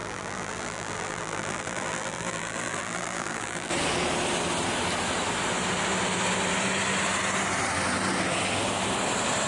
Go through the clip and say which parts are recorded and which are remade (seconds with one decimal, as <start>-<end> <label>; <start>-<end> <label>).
0.0-3.7 remade; 3.7-9.5 recorded